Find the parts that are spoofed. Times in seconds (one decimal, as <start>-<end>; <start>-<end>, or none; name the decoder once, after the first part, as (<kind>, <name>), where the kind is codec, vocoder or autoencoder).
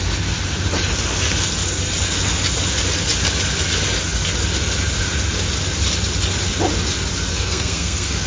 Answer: 7.3-8.3 (codec, SNAC)